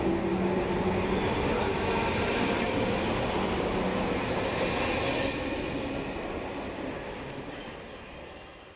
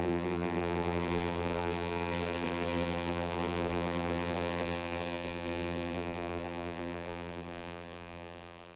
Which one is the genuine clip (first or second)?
first